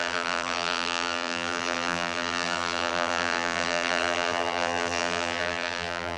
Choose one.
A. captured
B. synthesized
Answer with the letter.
B